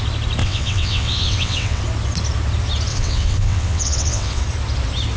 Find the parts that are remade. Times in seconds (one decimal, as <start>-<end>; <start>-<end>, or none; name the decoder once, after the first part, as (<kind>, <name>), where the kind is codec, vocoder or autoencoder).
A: 0.4-1.8 (vocoder, WaveNeXt); 2.9-4.4